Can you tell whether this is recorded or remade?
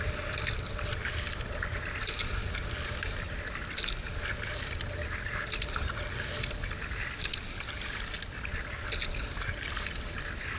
recorded